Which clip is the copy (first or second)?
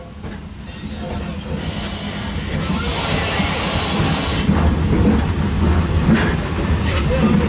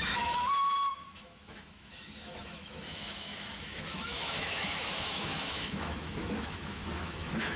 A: second